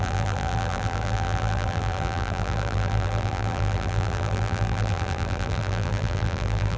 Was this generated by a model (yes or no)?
yes